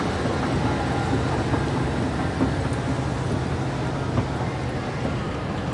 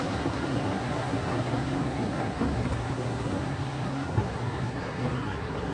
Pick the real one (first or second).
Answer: first